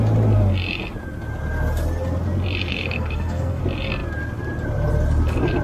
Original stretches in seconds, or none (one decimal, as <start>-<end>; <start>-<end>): 0.0-2.7; 3.6-5.6